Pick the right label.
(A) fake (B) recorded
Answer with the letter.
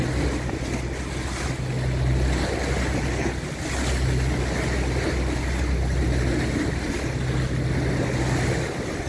B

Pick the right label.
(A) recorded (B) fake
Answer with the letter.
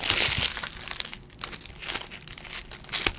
A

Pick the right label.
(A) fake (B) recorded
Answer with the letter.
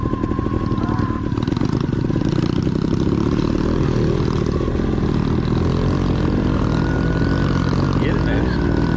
B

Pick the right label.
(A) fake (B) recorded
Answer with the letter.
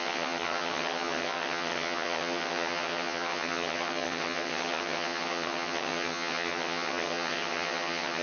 A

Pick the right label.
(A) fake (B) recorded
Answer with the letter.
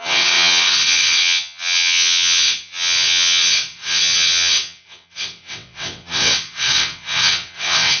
A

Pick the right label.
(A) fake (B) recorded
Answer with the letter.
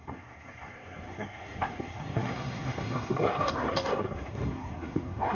A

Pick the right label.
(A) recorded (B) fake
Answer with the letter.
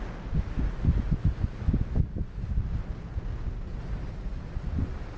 A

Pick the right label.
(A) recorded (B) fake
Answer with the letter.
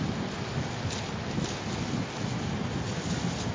A